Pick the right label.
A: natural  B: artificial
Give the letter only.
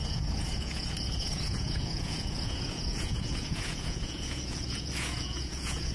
B